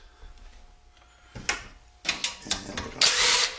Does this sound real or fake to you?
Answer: real